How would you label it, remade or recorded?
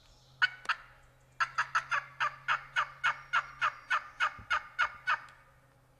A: recorded